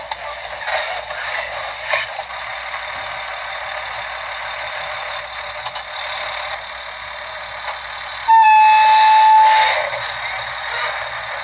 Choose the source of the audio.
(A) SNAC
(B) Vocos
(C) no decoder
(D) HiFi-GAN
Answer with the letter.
C